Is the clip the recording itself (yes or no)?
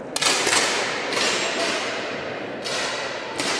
yes